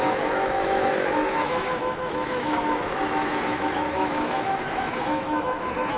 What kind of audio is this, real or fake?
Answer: fake